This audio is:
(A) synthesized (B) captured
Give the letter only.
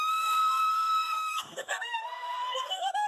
A